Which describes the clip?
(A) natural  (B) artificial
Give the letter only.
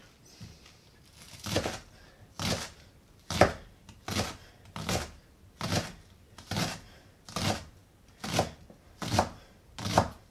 A